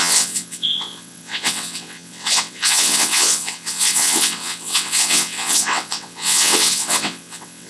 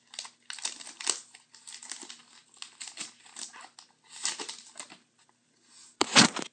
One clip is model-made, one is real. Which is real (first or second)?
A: second